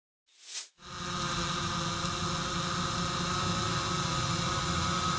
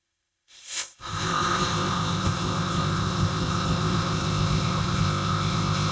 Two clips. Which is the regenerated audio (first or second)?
second